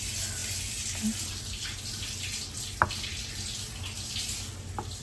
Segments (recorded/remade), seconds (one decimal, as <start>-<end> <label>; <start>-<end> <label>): 0.0-5.0 recorded